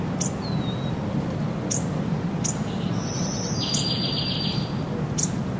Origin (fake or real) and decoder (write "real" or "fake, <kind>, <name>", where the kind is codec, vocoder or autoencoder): real